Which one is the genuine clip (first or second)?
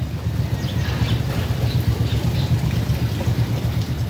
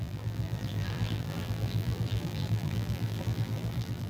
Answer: first